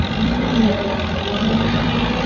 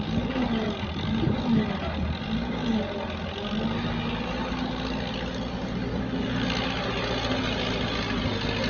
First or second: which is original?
second